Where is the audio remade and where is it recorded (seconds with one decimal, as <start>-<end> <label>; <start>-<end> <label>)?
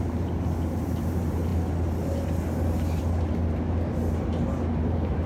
0.0-5.3 recorded